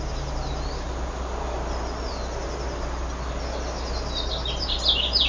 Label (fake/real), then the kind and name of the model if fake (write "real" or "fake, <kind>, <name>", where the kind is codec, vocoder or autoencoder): real